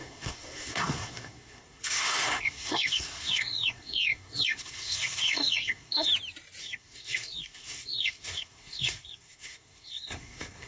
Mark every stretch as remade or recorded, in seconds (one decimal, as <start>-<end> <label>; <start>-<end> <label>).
0.0-6.1 remade; 6.1-6.6 recorded; 6.6-10.7 remade